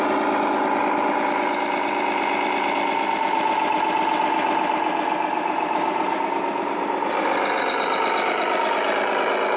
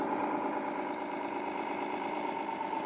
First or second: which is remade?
second